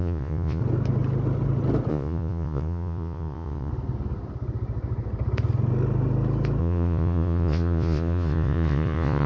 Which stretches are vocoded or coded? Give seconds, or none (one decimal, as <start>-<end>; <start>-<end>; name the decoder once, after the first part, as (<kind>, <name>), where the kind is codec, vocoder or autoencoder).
0.0-0.6 (vocoder, Vocos); 1.9-3.7; 6.6-9.3